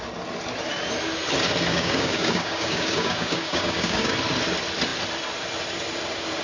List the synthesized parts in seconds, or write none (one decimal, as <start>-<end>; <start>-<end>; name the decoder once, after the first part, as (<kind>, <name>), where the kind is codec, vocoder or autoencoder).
1.7-4.1 (codec, DAC)